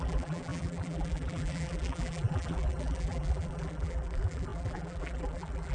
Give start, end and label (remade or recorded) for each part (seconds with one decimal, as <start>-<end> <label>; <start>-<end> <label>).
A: 0.0-5.7 remade